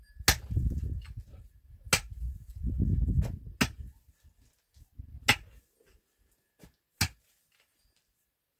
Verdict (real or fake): real